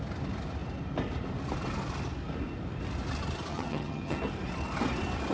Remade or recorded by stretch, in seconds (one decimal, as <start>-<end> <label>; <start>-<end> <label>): 0.0-3.5 recorded; 3.5-4.2 remade; 4.2-5.3 recorded